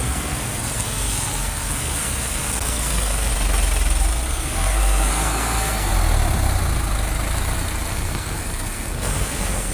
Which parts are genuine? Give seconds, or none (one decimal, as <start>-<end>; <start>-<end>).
3.3-4.3; 5.9-7.9